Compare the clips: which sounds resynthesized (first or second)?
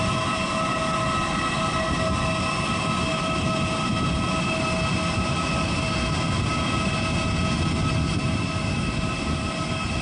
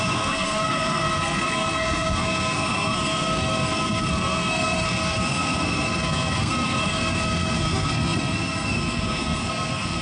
second